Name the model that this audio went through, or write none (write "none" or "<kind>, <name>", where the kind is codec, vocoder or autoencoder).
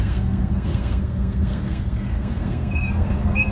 codec, SNAC